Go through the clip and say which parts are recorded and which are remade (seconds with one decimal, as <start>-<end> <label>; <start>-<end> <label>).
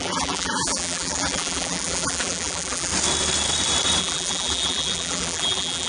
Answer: 0.0-2.9 remade; 2.9-4.0 recorded; 4.0-5.9 remade